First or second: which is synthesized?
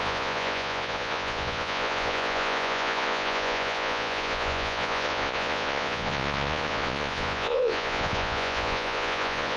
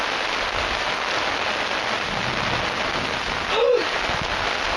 first